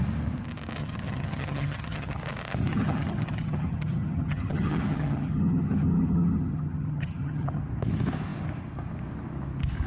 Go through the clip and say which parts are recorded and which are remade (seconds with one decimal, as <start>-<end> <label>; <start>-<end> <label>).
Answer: 0.0-0.8 recorded; 0.8-2.2 remade; 2.2-2.7 recorded; 2.7-7.6 remade; 7.6-9.9 recorded